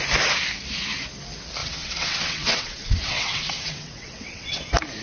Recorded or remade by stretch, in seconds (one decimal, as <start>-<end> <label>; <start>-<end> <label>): 0.0-1.6 recorded; 1.6-4.6 remade; 4.6-5.0 recorded